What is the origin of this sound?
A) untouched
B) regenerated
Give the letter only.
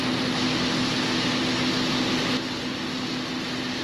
A